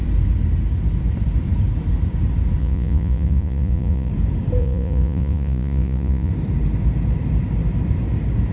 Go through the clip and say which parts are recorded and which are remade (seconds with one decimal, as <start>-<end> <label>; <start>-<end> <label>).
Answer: 0.0-2.6 recorded; 2.6-4.1 remade; 4.1-4.6 recorded; 4.6-6.3 remade; 6.3-8.5 recorded